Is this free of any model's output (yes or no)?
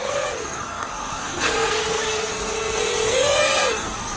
no